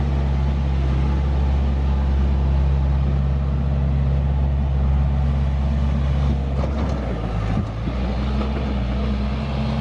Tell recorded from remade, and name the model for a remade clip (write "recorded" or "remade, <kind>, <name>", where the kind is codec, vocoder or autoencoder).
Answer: recorded